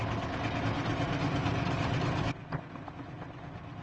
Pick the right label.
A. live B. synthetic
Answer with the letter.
A